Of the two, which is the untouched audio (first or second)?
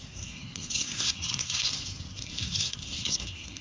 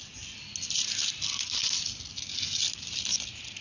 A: second